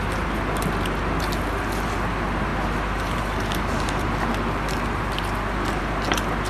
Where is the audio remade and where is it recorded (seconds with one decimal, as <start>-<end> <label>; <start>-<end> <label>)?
0.0-6.5 recorded